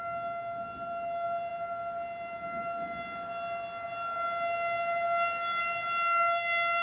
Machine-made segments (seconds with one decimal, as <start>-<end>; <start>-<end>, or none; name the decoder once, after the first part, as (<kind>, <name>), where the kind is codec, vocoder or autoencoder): none